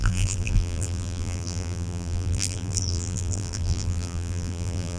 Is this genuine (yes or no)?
no